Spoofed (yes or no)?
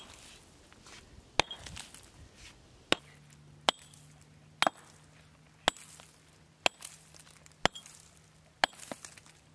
no